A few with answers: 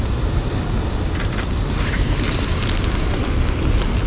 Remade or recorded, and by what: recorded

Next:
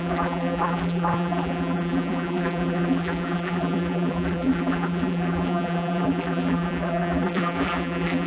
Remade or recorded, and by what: remade, vocoder, BigVGAN v2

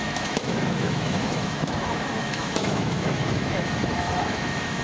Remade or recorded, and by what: remade, autoencoder, DAC-VAE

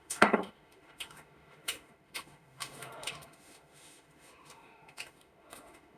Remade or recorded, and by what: remade, autoencoder, DAC-VAE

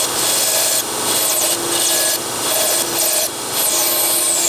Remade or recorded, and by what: recorded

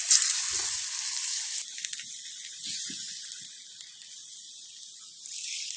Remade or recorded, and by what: recorded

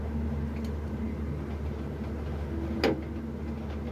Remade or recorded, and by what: recorded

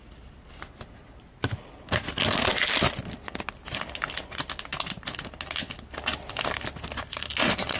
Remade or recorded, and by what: recorded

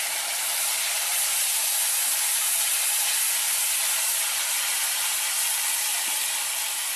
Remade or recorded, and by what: recorded